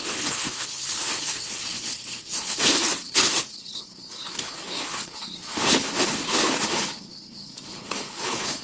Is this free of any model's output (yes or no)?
no